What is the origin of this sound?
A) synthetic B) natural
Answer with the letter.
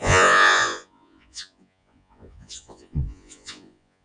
A